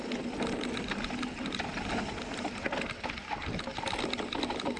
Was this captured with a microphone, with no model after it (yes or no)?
yes